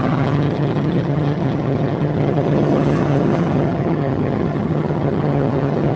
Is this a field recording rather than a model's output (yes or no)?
no